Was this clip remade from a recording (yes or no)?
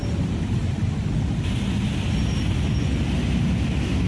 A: no